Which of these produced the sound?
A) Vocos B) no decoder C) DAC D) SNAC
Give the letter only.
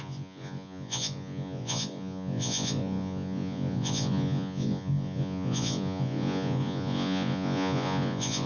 A